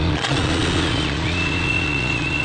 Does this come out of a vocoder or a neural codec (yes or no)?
yes